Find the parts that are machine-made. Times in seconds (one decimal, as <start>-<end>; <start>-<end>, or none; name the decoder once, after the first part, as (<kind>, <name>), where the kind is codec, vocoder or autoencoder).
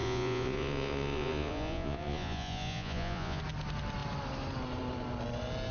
0.0-3.4 (vocoder, Vocos)